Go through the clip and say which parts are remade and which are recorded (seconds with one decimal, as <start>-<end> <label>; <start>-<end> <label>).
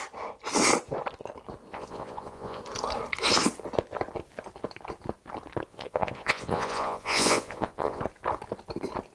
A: 0.0-1.7 recorded; 1.7-2.6 remade; 2.6-5.7 recorded; 5.7-8.0 remade; 8.0-9.1 recorded